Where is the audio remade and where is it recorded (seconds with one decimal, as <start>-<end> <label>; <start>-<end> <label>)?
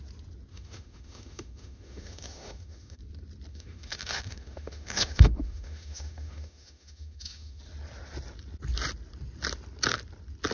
0.0-0.5 recorded; 0.5-3.0 remade; 3.0-3.5 recorded; 3.5-7.6 remade; 7.6-10.5 recorded